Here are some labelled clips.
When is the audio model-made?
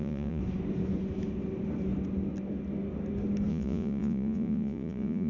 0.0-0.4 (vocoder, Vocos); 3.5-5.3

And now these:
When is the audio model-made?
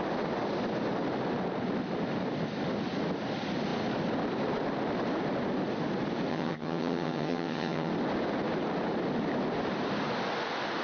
6.3-7.9 (vocoder, HiFi-GAN)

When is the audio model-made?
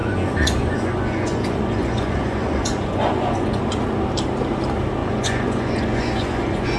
0.0-3.6 (vocoder, Vocos); 5.0-6.8